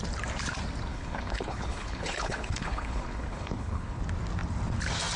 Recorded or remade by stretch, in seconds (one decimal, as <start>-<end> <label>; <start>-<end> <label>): 0.0-0.9 recorded; 0.9-4.0 remade; 4.0-5.2 recorded